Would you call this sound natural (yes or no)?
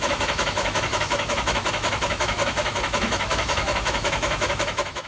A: no